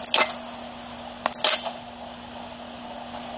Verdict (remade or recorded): recorded